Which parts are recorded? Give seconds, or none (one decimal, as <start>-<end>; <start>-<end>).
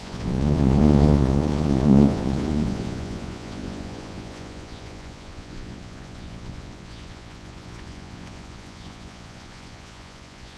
none